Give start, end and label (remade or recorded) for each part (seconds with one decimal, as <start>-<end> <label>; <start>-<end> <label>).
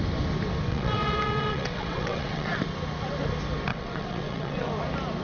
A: 0.0-0.7 recorded; 0.7-2.6 remade; 2.6-3.7 recorded; 3.7-4.7 remade; 4.7-5.2 recorded